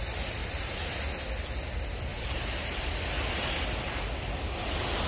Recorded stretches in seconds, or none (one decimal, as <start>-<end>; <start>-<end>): 0.0-0.4; 1.1-2.1; 3.0-5.1